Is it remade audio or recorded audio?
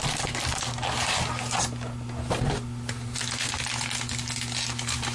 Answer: recorded